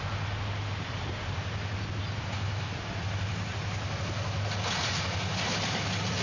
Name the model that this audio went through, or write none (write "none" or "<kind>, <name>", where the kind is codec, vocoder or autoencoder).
none